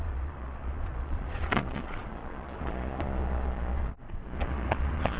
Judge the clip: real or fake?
fake